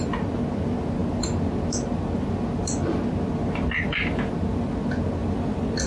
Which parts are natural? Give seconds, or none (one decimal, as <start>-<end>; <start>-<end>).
0.0-5.2